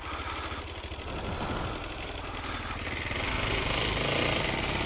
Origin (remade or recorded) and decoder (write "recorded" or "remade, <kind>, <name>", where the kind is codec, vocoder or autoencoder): recorded